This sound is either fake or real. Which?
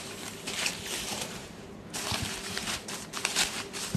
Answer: fake